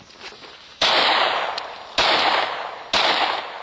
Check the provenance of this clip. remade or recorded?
recorded